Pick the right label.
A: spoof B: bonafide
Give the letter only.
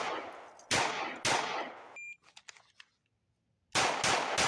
B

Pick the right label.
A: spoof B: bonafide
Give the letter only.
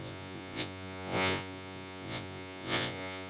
A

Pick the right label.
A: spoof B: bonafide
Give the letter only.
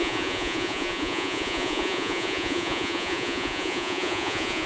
A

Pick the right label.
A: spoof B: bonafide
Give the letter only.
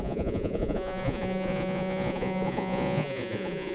A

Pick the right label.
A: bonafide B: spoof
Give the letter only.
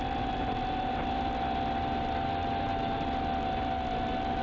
A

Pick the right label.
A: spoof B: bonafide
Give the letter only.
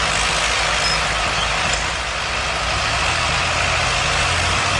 B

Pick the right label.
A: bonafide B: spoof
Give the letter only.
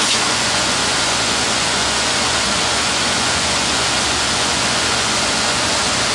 B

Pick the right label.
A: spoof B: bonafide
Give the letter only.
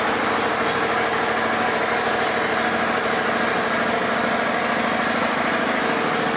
B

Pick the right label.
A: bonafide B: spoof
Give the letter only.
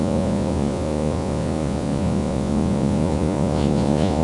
B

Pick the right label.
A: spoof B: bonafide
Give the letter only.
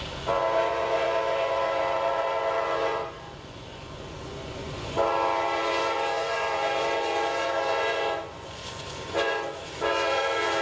A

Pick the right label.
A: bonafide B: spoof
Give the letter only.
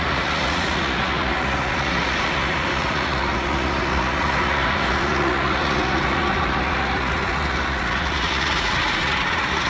B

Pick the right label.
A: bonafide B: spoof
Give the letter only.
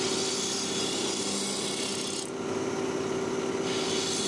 A